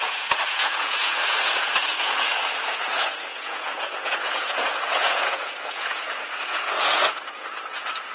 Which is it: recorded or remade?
remade